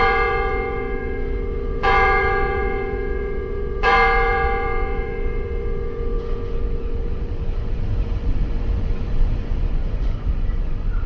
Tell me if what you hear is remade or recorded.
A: remade